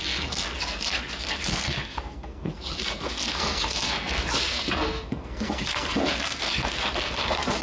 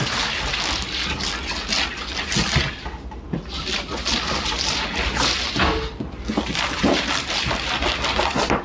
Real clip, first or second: second